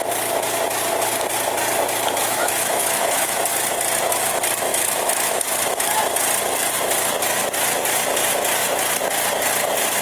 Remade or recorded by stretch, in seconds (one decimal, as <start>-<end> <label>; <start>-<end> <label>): 0.0-2.2 recorded; 2.2-3.4 remade; 3.4-4.7 recorded; 4.7-6.0 remade; 6.0-10.0 recorded